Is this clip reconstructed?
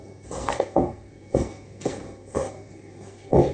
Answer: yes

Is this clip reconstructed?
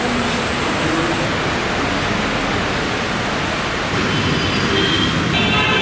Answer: no